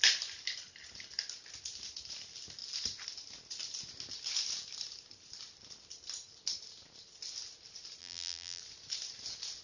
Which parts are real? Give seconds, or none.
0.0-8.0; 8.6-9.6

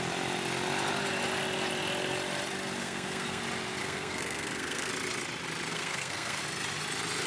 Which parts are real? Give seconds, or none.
0.0-2.8; 3.4-3.8; 4.9-5.7; 6.4-7.3